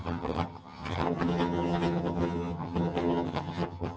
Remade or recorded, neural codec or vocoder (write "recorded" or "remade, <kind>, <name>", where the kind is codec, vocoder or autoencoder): remade, vocoder, HiFi-GAN